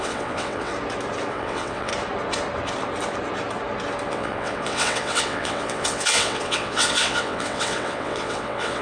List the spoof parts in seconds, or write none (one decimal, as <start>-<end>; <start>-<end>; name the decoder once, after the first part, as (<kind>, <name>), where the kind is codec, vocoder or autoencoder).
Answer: 0.0-0.7 (vocoder, WaveNeXt); 1.3-1.9; 4.1-8.8